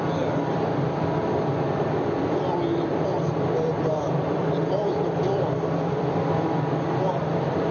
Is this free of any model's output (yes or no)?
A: no